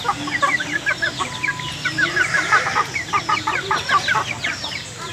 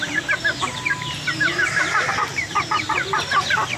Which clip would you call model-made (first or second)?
first